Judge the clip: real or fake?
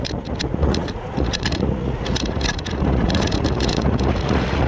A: fake